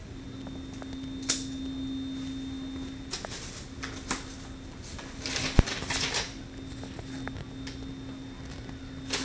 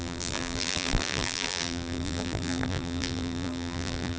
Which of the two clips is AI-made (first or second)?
second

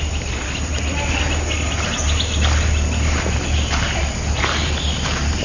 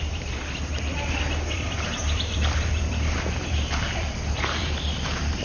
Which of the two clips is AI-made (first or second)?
second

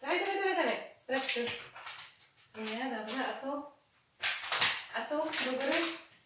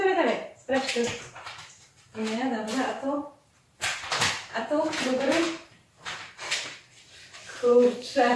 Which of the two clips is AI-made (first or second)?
second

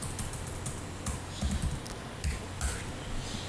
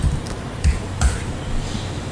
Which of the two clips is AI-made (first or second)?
second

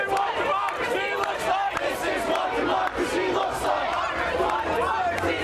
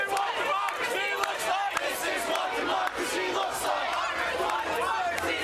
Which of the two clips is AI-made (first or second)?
first